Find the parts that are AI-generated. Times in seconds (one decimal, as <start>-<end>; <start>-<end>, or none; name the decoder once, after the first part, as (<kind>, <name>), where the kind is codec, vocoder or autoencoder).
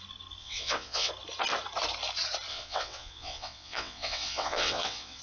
0.4-1.1 (vocoder, WaveNeXt); 2.5-5.2